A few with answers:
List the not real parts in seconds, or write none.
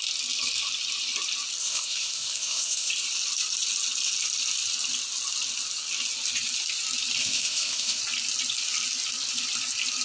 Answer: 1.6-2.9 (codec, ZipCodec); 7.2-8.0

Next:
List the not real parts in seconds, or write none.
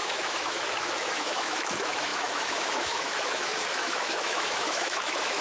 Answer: 0.0-5.4 (autoencoder, DAC-VAE)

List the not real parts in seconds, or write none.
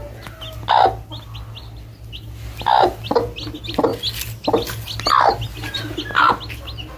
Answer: none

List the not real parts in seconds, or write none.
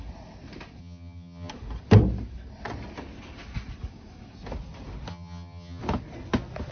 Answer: 0.8-1.5 (vocoder, HiFi-GAN); 5.1-5.8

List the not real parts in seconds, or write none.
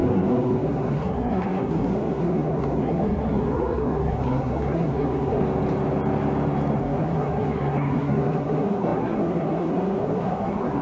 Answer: 0.0-5.4 (codec, SNAC); 6.8-10.8